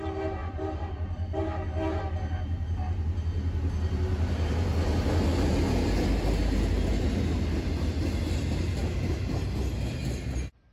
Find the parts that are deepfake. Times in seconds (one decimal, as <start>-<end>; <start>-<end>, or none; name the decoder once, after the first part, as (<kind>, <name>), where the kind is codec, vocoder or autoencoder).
0.4-1.4 (vocoder, BigVGAN v2)